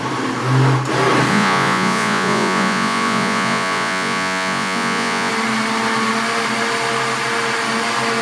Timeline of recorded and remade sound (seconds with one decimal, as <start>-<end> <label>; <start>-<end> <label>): 0.0-1.3 recorded; 1.3-5.3 remade; 5.3-8.2 recorded

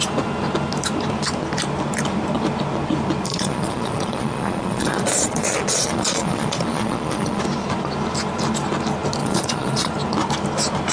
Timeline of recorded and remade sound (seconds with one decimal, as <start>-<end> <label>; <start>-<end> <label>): 0.0-3.3 recorded; 3.3-7.4 remade; 7.4-9.2 recorded; 9.2-9.9 remade; 9.9-10.9 recorded

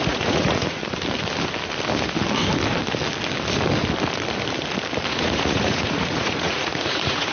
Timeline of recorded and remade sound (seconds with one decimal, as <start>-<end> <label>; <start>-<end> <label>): 0.0-0.8 remade; 0.8-5.1 recorded; 5.1-7.3 remade

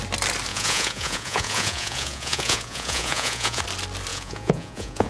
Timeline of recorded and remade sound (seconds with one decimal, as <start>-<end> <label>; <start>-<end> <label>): 0.0-0.5 recorded; 0.5-3.6 remade; 3.6-4.1 recorded; 4.1-5.1 remade

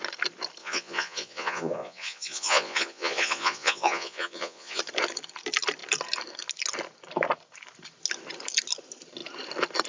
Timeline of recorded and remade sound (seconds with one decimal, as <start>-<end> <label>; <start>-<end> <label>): 0.0-0.6 recorded; 0.6-4.8 remade; 4.8-9.9 recorded

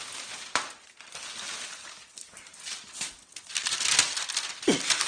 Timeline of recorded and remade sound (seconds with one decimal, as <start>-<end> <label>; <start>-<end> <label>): 0.0-5.1 recorded

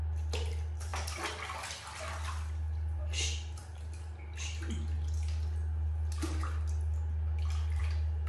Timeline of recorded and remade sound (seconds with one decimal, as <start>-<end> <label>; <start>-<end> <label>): 0.0-8.3 recorded

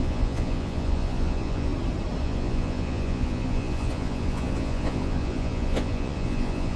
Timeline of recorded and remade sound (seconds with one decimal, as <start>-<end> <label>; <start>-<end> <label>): 0.0-1.7 remade; 1.7-2.2 recorded; 2.2-6.8 remade